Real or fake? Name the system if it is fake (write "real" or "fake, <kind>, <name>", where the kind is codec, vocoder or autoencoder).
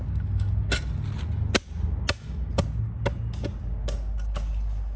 real